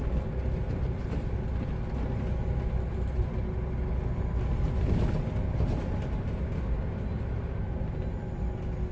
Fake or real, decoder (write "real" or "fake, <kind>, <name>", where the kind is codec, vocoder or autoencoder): real